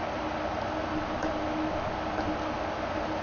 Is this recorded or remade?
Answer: recorded